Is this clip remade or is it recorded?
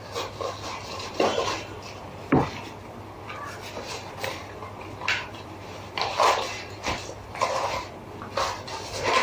remade